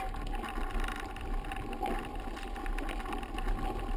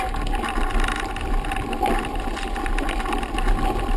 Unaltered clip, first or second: first